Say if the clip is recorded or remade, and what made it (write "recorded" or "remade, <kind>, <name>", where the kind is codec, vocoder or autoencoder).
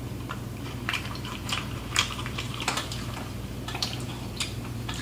remade, vocoder, BigVGAN v2